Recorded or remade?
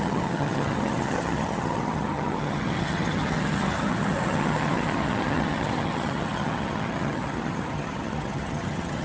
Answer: remade